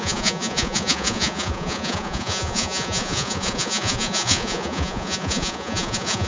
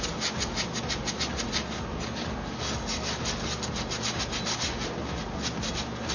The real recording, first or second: second